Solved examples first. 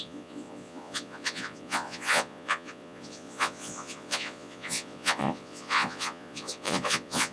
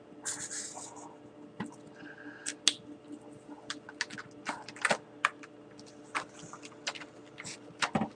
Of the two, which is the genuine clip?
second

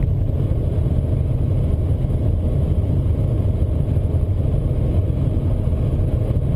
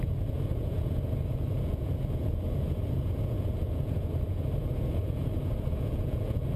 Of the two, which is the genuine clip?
first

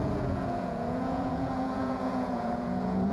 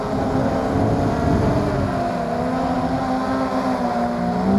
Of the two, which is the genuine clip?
second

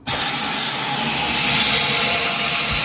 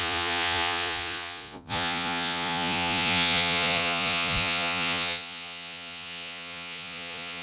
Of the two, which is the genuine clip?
first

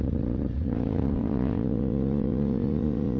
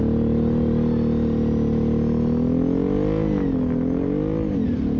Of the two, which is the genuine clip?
second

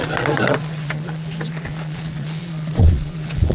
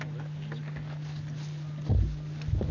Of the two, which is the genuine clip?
second